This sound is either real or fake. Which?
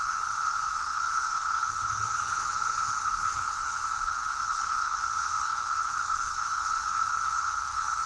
fake